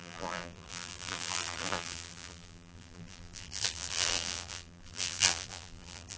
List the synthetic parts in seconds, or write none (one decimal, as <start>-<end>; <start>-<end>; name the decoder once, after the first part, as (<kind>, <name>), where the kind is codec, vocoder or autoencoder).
0.0-6.2 (vocoder, BigVGAN v2)